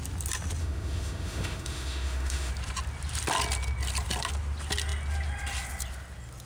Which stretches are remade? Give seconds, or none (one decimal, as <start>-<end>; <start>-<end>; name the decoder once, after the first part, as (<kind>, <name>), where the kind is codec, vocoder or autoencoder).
0.6-2.5 (autoencoder, DAC-VAE)